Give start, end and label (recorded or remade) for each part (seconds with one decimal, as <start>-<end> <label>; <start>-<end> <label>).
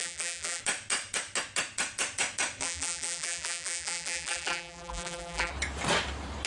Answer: 0.0-0.6 remade; 0.6-2.6 recorded; 2.6-5.5 remade; 5.5-6.5 recorded